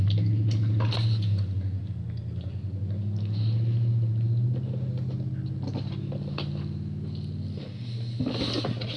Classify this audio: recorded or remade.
recorded